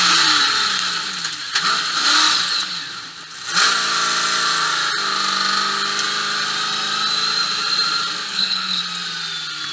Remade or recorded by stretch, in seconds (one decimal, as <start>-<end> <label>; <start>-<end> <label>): 0.0-8.3 recorded; 8.3-8.8 remade; 8.8-9.7 recorded